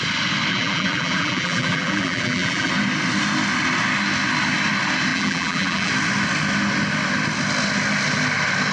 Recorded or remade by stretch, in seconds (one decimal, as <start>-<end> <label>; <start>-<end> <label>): 0.0-0.5 recorded; 0.5-2.7 remade; 2.7-5.1 recorded; 5.1-5.9 remade; 5.9-8.7 recorded